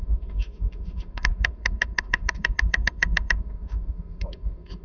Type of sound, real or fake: fake